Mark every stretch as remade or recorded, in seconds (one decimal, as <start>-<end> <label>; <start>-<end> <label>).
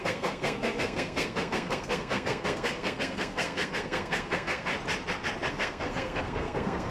0.0-4.7 remade; 4.7-5.5 recorded; 5.5-6.9 remade